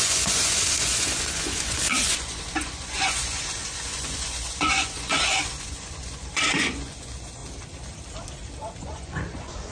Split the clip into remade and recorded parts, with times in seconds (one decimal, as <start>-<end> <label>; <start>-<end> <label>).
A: 0.0-7.4 remade; 7.4-8.8 recorded; 8.8-9.7 remade

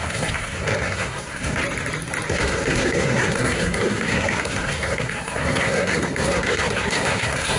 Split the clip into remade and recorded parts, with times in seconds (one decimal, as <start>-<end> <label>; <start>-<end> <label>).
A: 0.0-1.6 remade; 1.6-2.3 recorded; 2.3-7.6 remade

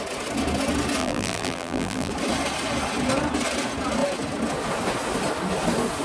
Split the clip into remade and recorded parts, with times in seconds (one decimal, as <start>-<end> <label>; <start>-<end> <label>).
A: 0.0-1.0 recorded; 1.0-2.1 remade; 2.1-6.0 recorded

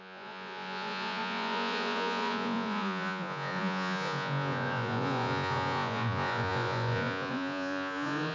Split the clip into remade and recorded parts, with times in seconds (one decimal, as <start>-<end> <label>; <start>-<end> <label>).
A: 0.0-8.3 remade

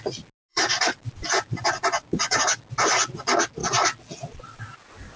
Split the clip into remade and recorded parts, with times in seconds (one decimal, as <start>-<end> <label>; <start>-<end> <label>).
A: 0.0-0.5 recorded; 0.5-2.6 remade; 2.6-5.2 recorded

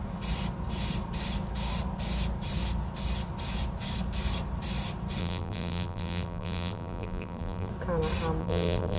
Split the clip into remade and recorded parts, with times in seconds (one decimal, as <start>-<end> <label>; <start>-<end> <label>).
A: 0.0-5.2 recorded; 5.2-7.7 remade; 7.7-8.4 recorded; 8.4-9.0 remade